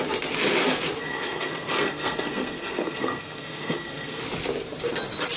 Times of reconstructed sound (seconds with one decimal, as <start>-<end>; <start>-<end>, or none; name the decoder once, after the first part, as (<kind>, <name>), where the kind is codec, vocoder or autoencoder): 1.0-4.2 (codec, SNAC)